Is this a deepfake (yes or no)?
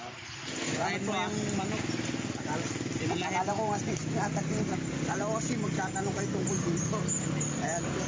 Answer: no